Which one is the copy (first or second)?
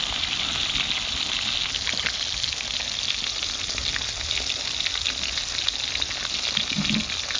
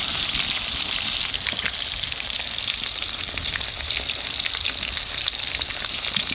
second